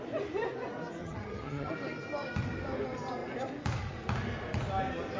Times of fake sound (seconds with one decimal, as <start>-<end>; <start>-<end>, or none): 1.0-1.7